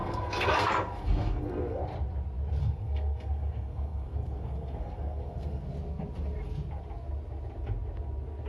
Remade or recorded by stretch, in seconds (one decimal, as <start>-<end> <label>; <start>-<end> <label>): 0.0-1.8 remade; 1.8-2.6 recorded; 2.6-5.6 remade; 5.6-8.5 recorded